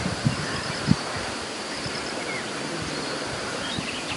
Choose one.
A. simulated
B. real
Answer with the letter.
A